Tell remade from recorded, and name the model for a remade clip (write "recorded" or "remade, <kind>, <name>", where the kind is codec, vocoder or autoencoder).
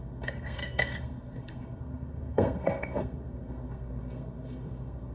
remade, codec, SNAC